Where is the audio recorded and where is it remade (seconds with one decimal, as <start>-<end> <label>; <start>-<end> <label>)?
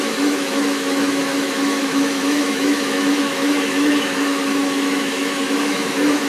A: 0.0-6.3 remade